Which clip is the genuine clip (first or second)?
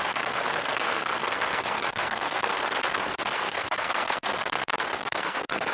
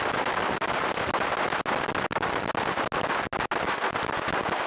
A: second